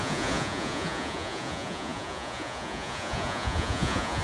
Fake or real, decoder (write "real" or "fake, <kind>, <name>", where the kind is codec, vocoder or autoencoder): fake, vocoder, Vocos